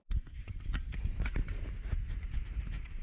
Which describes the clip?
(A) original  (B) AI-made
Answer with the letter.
B